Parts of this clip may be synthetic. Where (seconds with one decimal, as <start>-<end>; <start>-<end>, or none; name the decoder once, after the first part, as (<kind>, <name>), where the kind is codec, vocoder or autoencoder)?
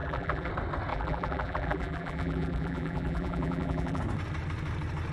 0.0-0.5 (vocoder, BigVGAN v2); 0.9-4.0